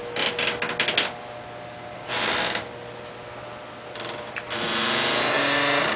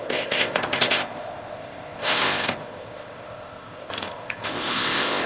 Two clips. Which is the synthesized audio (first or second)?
second